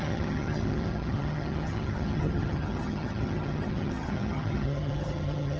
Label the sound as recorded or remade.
remade